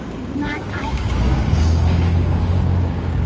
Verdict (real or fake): fake